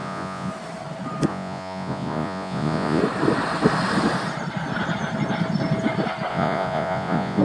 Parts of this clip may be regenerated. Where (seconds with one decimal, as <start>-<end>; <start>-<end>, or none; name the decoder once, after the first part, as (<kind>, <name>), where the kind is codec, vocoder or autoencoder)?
0.0-0.5 (vocoder, Vocos); 1.3-3.0; 6.3-7.4